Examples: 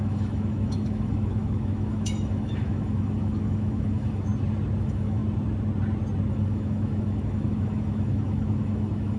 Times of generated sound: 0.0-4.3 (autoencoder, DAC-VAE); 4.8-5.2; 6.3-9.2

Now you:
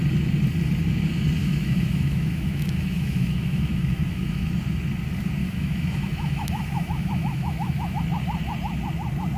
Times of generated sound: 1.4-4.5 (autoencoder, DAC-VAE); 5.4-8.0